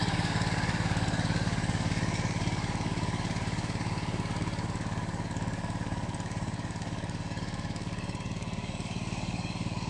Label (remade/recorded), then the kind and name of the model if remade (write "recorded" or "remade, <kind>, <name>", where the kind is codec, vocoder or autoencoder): remade, codec, DAC